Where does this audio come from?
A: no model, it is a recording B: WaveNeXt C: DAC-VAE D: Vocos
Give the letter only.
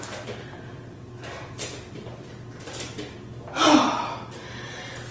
A